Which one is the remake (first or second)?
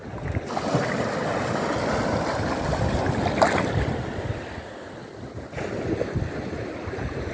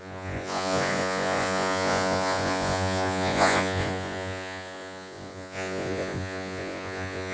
second